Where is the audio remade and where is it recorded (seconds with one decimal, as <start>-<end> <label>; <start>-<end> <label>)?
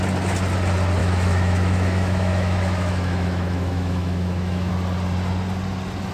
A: 0.0-1.0 recorded; 1.0-4.7 remade; 4.7-6.1 recorded